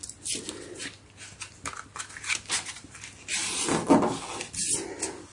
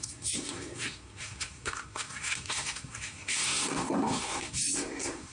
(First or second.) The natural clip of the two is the first